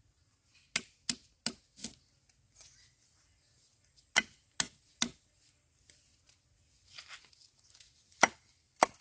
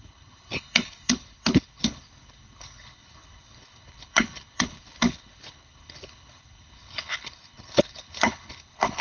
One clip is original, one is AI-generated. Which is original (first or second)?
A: first